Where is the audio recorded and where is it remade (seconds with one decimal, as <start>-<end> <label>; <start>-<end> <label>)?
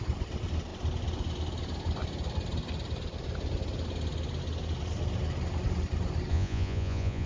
0.0-6.3 recorded; 6.3-7.3 remade